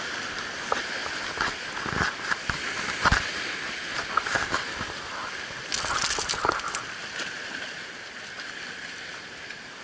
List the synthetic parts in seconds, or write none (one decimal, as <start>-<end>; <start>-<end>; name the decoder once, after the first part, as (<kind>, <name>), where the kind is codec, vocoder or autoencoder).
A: none